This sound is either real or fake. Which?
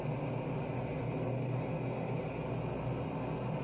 real